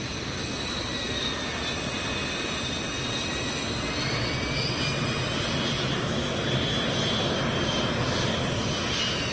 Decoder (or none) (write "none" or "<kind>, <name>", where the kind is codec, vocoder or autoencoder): none